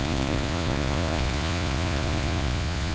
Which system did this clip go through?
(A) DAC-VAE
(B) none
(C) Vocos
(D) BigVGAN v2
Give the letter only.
C